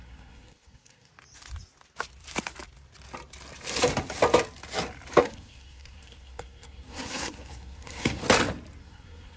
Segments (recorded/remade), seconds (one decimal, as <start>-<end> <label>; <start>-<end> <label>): 0.0-1.1 remade; 1.1-5.2 recorded; 5.2-8.2 remade; 8.2-8.8 recorded; 8.8-9.4 remade